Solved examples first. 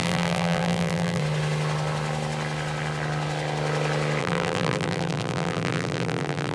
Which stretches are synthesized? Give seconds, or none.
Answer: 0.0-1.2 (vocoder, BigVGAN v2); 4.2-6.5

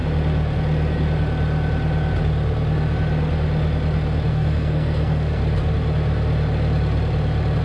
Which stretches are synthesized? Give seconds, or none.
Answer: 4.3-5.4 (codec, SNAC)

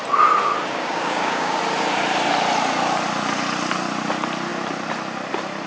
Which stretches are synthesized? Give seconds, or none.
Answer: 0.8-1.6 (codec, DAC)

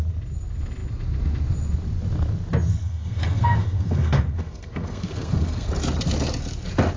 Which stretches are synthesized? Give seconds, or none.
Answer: 2.7-5.7 (codec, SNAC)